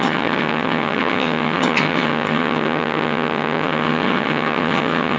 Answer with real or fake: fake